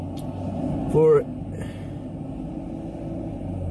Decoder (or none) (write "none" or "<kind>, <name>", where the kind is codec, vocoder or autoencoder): none